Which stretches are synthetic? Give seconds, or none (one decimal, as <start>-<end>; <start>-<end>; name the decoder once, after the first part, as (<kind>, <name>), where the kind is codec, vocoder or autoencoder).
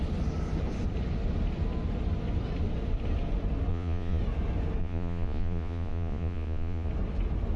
3.7-4.2 (vocoder, Vocos); 4.8-6.9